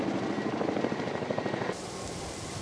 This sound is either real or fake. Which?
real